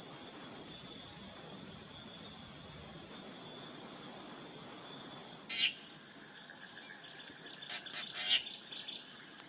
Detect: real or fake real